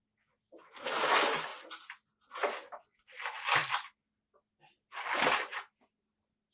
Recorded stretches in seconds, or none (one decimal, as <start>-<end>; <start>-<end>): 0.0-6.5